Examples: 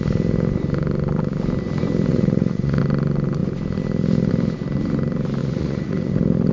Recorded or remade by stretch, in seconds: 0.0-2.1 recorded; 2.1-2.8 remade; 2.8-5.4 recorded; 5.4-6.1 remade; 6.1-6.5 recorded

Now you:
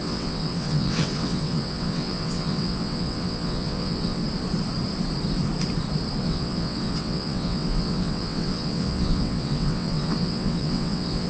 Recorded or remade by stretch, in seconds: 0.0-4.2 remade; 4.2-6.2 recorded; 6.2-11.3 remade

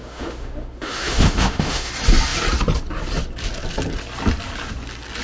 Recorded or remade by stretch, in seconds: 0.0-1.9 remade; 1.9-5.2 recorded

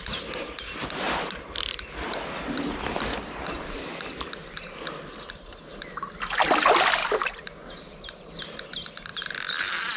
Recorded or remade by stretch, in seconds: 0.0-4.4 recorded; 4.4-5.2 remade; 5.2-7.0 recorded; 7.0-7.9 remade; 7.9-10.0 recorded

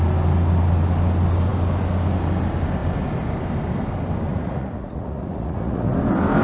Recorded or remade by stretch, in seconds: 0.0-4.3 recorded; 4.3-5.9 remade; 5.9-6.4 recorded

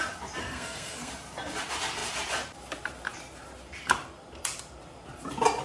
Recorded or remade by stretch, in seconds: 0.0-0.4 recorded; 0.4-1.1 remade; 1.1-5.6 recorded